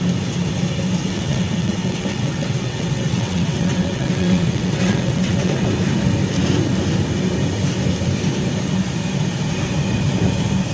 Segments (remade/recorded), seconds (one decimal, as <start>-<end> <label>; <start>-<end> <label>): 0.0-1.0 recorded; 1.0-5.7 remade; 5.7-10.7 recorded